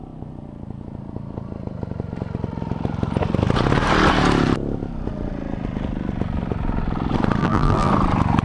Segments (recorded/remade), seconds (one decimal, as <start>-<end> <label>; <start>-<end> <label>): 0.0-7.4 recorded; 7.4-7.9 remade; 7.9-8.4 recorded

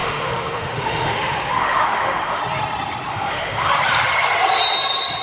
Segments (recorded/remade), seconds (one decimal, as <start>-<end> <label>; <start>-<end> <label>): 0.0-2.4 remade; 2.4-3.1 recorded; 3.1-3.7 remade; 3.7-5.2 recorded

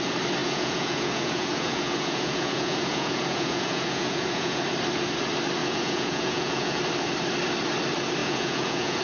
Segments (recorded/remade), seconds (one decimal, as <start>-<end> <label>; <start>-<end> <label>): 0.0-0.4 recorded; 0.4-4.6 remade; 4.6-5.6 recorded; 5.6-6.8 remade; 6.8-8.2 recorded; 8.2-9.0 remade

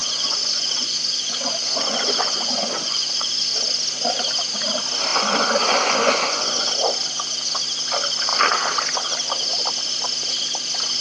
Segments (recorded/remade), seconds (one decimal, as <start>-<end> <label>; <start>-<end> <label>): 0.0-3.3 remade; 3.3-5.1 recorded; 5.1-6.7 remade; 6.7-11.0 recorded

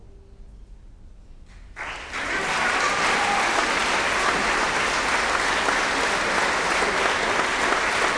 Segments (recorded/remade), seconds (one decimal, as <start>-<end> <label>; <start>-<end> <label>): 0.0-8.2 recorded

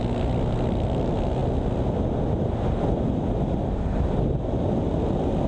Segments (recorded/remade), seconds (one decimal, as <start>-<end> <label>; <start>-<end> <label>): 0.0-5.5 recorded

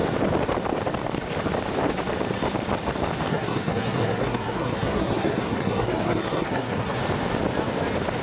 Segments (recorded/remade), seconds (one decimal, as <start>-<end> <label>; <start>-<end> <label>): 0.0-3.3 recorded; 3.3-7.0 remade; 7.0-8.2 recorded

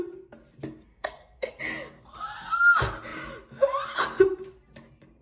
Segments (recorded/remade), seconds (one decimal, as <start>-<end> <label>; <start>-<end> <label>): 0.0-0.9 recorded; 0.9-1.6 remade; 1.6-5.2 recorded